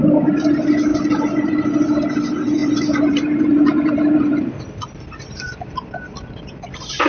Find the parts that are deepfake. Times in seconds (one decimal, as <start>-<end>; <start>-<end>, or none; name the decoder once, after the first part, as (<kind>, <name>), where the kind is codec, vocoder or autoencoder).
0.9-1.5 (vocoder, BigVGAN v2); 2.6-7.1